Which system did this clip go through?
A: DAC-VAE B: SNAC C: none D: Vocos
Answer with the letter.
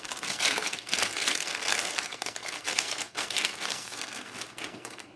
B